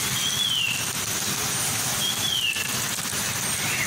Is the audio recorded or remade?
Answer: recorded